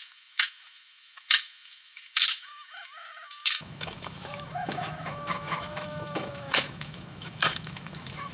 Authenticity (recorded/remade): remade